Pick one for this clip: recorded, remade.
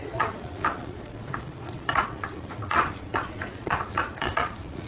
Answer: remade